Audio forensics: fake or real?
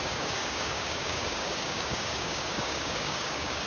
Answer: fake